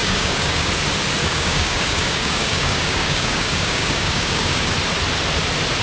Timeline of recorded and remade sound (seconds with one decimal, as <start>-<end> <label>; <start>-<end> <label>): 0.0-0.7 remade; 0.7-1.2 recorded; 1.2-4.7 remade; 4.7-5.8 recorded